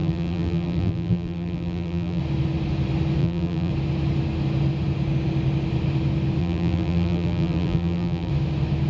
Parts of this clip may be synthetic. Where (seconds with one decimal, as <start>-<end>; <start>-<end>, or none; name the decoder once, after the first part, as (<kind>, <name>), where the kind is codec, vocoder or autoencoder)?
0.0-2.2 (vocoder, BigVGAN v2); 3.2-3.7; 6.4-8.3